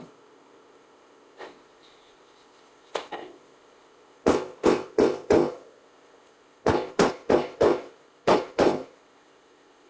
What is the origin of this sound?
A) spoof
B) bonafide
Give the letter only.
A